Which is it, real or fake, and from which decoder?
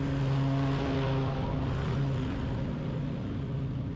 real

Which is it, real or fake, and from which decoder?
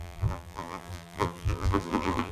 fake, vocoder, BigVGAN v2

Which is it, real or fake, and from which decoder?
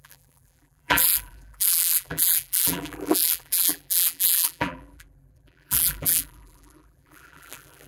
fake, vocoder, BigVGAN v2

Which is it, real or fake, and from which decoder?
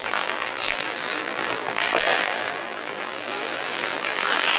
fake, vocoder, BigVGAN v2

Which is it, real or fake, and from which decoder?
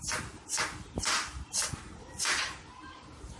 fake, vocoder, BigVGAN v2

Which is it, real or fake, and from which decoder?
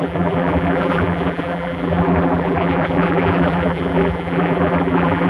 fake, vocoder, BigVGAN v2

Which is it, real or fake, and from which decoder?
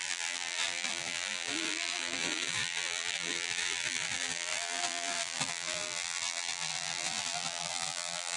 fake, vocoder, BigVGAN v2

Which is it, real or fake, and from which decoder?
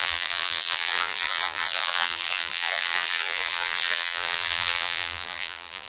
fake, vocoder, BigVGAN v2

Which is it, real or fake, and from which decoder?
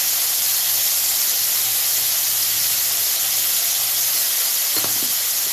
real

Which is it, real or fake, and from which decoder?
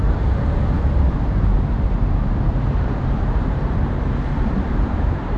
fake, vocoder, BigVGAN v2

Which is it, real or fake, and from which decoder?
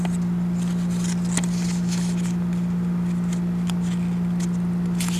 real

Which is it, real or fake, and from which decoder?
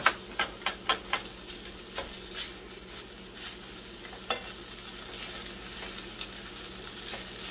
real